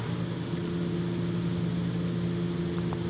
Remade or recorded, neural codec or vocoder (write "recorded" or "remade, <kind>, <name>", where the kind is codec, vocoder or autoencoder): recorded